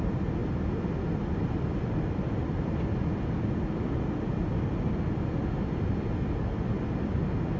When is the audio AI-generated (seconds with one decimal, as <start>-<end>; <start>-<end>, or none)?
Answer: none